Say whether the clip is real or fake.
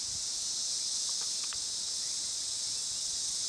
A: real